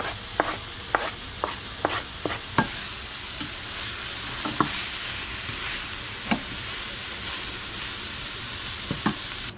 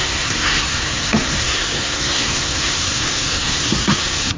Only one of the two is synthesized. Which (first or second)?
second